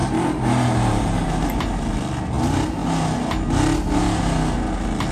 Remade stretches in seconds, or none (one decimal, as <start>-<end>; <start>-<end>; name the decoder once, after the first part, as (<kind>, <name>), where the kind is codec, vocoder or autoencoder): 0.0-1.9 (vocoder, BigVGAN v2)